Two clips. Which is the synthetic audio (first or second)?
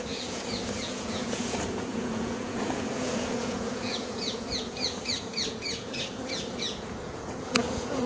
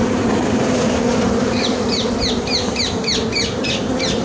first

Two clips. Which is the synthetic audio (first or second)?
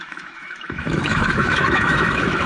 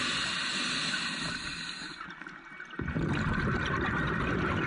first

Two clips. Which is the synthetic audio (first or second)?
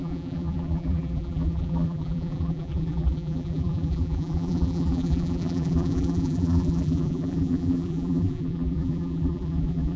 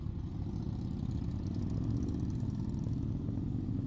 first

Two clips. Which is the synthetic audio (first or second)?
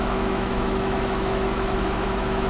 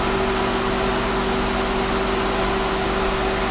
first